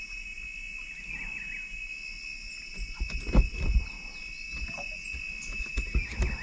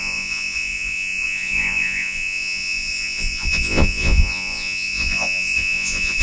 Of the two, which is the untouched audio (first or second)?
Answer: first